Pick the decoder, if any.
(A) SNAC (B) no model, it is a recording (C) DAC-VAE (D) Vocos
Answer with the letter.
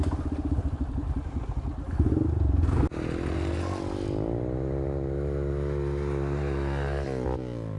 B